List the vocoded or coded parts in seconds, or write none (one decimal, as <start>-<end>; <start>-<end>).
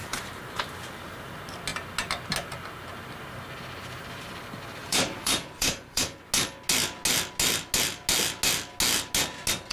0.0-0.6; 4.8-6.0